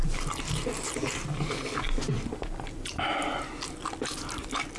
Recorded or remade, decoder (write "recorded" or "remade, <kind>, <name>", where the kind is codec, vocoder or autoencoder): recorded